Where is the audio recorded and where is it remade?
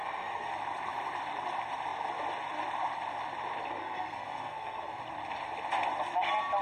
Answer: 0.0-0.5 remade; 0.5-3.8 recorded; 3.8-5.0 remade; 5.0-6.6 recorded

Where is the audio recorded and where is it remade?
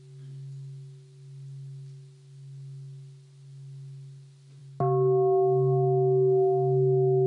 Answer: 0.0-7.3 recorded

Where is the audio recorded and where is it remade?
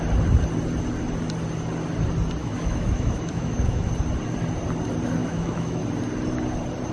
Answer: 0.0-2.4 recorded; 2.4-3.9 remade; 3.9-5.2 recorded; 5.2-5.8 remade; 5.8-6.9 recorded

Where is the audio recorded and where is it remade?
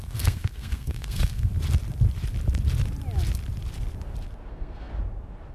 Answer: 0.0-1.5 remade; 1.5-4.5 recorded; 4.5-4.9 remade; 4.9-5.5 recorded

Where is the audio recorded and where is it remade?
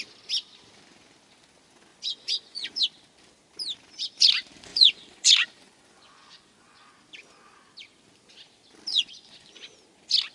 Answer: 0.0-1.9 recorded; 1.9-2.8 remade; 2.8-4.7 recorded; 4.7-6.9 remade; 6.9-8.9 recorded; 8.9-9.6 remade; 9.6-10.3 recorded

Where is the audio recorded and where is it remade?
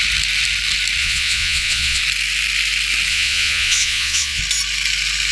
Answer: 0.0-1.0 recorded; 1.0-2.0 remade; 2.0-3.1 recorded; 3.1-4.4 remade; 4.4-5.3 recorded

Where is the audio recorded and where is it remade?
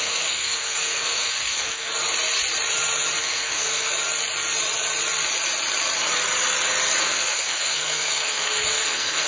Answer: 0.0-1.9 remade; 1.9-3.2 recorded; 3.2-3.9 remade; 3.9-7.0 recorded; 7.0-9.3 remade